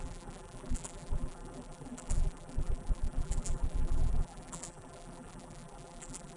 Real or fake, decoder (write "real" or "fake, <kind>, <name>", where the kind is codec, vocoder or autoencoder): fake, vocoder, BigVGAN v2